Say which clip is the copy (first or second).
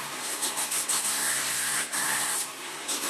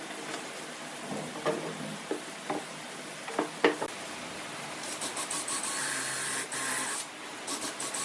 first